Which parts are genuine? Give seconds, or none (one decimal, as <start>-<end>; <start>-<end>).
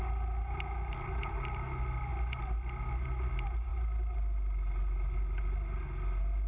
0.0-6.5